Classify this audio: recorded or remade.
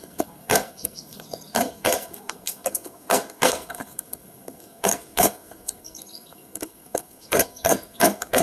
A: remade